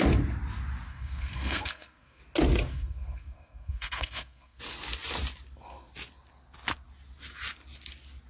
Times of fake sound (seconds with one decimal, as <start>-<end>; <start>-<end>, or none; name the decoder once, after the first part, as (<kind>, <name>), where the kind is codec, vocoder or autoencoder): 0.9-2.2 (codec, SNAC); 2.7-4.6